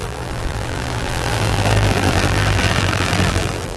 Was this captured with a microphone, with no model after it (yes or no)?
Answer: no